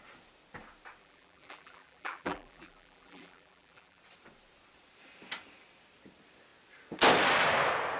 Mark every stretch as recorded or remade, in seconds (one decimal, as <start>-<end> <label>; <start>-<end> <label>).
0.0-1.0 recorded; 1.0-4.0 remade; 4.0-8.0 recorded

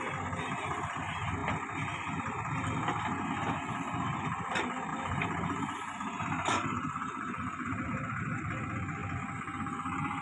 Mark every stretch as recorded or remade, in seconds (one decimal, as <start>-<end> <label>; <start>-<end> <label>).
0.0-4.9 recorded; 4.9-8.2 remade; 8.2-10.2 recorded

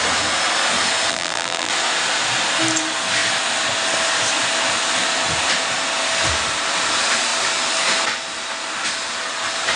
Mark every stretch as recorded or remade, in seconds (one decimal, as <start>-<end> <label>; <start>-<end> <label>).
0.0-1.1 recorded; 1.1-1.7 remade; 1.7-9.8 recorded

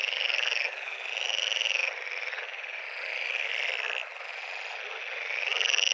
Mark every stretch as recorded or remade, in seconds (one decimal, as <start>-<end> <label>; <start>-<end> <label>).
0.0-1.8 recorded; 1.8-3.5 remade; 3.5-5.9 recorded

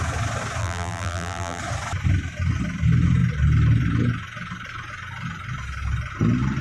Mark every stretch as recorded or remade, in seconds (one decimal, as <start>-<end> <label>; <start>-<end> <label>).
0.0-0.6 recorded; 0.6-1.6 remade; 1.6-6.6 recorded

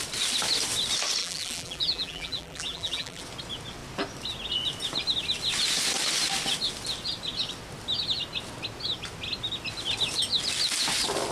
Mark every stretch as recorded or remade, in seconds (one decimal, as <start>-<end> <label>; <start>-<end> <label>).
0.0-1.2 recorded; 1.2-3.2 remade; 3.2-11.3 recorded

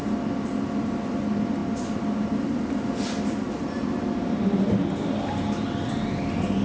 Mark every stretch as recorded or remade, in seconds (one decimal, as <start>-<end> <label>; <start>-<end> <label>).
0.0-6.6 recorded

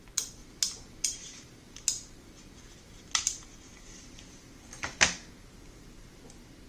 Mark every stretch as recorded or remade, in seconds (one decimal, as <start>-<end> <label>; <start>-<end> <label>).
0.0-0.4 recorded; 0.4-4.4 remade; 4.4-6.7 recorded